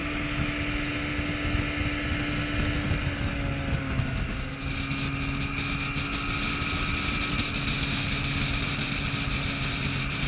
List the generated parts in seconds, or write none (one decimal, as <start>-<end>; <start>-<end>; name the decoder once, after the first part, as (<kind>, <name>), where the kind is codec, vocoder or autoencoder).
none